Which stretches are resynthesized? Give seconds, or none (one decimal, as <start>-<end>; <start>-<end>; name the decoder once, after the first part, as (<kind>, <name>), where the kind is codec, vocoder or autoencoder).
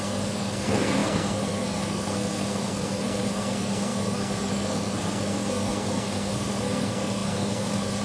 0.0-8.0 (codec, SNAC)